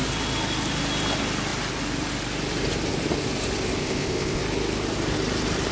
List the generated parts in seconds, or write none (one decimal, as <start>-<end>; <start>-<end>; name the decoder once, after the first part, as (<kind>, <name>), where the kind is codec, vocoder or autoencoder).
3.8-4.4 (codec, ZipCodec)